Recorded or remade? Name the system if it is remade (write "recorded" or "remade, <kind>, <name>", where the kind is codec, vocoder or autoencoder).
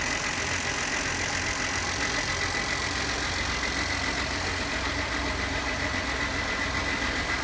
recorded